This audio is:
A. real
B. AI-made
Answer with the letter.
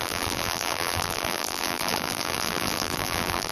B